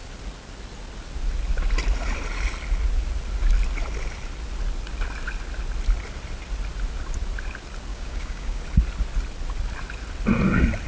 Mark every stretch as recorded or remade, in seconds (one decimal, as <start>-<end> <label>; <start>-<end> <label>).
0.0-7.9 recorded; 7.9-8.6 remade; 8.6-10.9 recorded